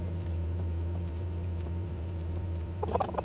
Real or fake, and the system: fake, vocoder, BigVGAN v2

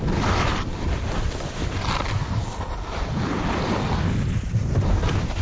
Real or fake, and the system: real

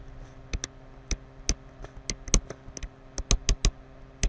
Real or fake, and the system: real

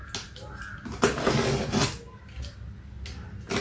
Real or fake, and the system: real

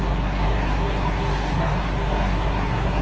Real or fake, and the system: fake, codec, SNAC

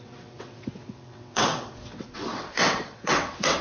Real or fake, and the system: fake, vocoder, WaveNeXt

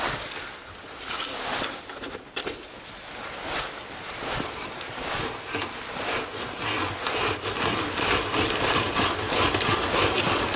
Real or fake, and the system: real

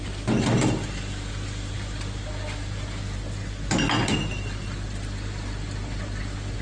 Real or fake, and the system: real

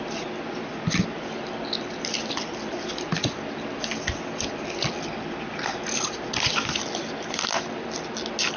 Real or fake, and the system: real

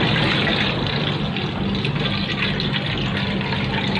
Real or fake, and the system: real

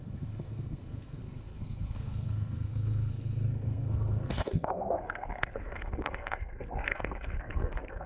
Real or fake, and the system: fake, codec, SNAC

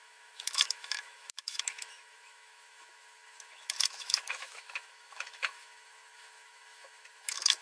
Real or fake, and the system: fake, autoencoder, DAC-VAE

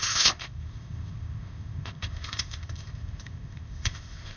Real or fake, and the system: fake, codec, ZipCodec